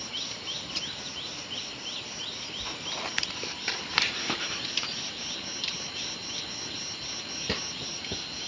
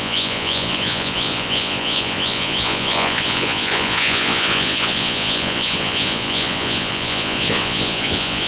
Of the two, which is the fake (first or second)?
second